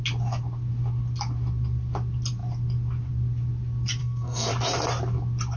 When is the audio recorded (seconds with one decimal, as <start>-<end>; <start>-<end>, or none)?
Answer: 0.0-4.0; 4.5-5.6